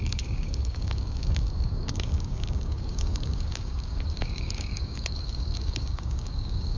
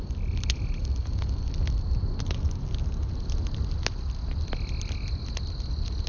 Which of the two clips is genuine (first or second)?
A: second